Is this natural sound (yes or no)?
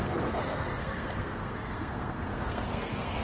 no